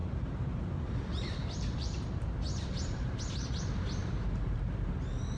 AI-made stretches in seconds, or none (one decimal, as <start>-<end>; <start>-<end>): 0.0-3.2; 4.0-4.9